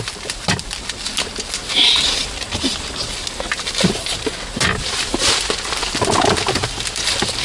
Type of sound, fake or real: real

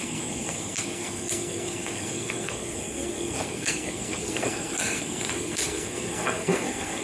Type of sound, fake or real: fake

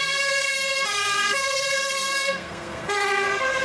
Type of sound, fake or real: fake